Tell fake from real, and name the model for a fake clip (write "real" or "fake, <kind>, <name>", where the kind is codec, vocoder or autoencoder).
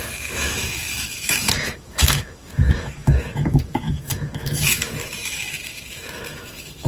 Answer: fake, autoencoder, DAC-VAE